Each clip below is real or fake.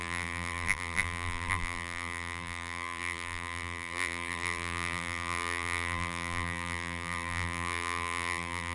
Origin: fake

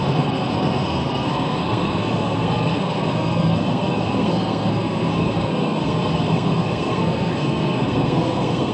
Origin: fake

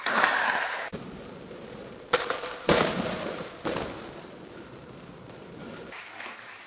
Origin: fake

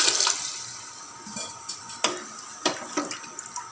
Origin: real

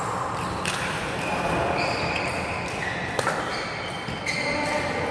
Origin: real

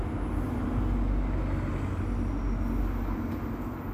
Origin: real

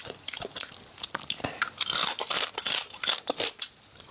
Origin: real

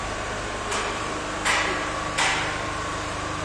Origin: fake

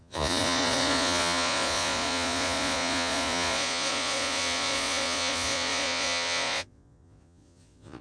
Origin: fake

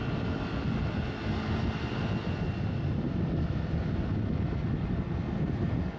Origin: real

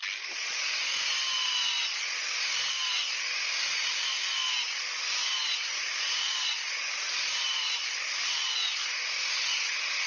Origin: real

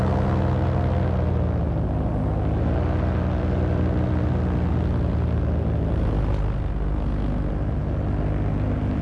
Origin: real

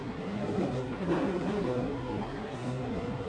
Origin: fake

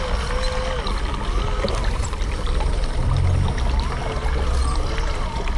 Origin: real